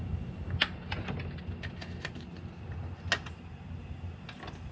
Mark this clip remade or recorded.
recorded